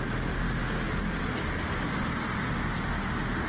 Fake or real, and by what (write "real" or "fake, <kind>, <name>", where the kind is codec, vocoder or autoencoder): real